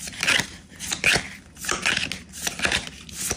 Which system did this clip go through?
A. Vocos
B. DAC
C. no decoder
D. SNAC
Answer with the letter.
C